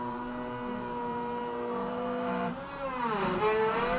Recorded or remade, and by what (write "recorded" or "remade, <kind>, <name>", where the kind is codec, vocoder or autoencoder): remade, vocoder, BigVGAN v2